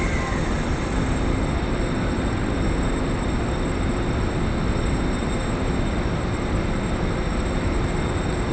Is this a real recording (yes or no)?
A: yes